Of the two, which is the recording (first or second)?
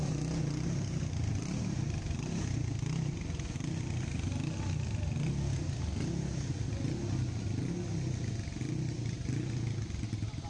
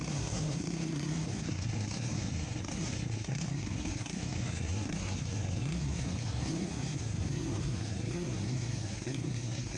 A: first